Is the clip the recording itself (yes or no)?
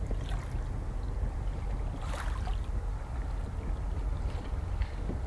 yes